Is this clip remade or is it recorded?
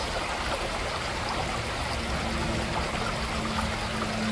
recorded